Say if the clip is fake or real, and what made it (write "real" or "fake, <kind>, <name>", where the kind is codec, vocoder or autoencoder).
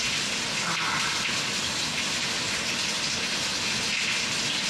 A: real